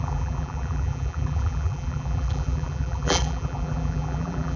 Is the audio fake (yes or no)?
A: yes